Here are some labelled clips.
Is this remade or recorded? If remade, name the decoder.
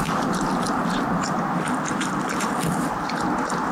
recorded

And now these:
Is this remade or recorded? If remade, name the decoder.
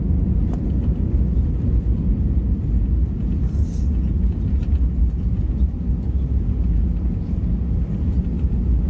recorded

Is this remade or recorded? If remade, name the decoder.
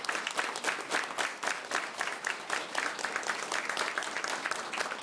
recorded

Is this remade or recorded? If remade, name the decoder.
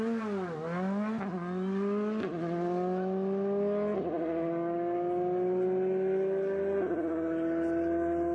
recorded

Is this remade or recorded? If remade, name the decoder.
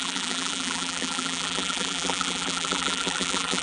remade, vocoder, BigVGAN v2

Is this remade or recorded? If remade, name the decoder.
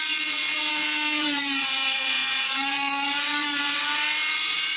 remade, vocoder, WaveNeXt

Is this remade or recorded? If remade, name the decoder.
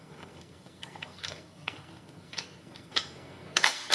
remade, codec, SNAC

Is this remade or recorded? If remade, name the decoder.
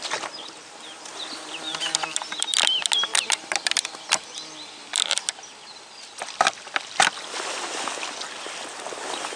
recorded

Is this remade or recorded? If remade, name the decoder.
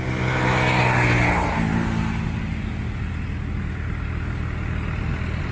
recorded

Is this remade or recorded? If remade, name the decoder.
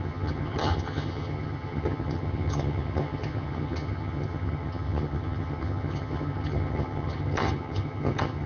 remade, vocoder, HiFi-GAN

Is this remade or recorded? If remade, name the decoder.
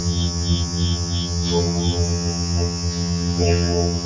remade, vocoder, HiFi-GAN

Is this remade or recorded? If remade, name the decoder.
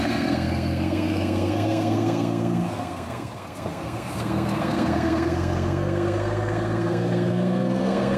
remade, codec, SNAC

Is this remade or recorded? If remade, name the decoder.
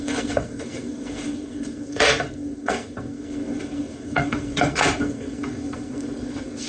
remade, codec, SNAC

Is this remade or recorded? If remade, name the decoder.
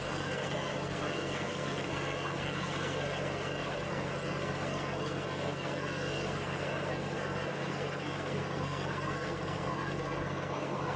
remade, codec, SNAC